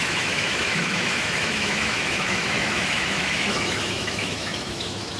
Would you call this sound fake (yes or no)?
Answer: yes